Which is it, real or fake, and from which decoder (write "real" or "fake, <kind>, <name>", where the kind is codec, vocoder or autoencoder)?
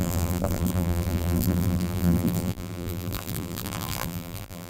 fake, vocoder, BigVGAN v2